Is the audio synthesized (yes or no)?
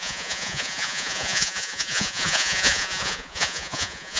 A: yes